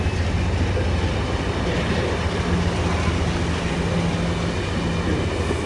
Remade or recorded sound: recorded